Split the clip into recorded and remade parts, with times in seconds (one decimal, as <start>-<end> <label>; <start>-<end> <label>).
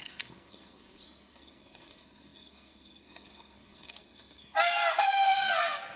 0.0-6.0 remade